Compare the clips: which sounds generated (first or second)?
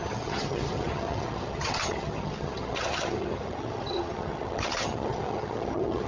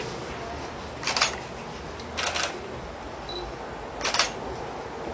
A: first